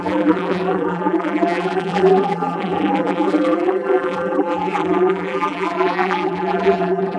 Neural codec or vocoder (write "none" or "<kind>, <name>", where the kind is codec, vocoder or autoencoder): vocoder, BigVGAN v2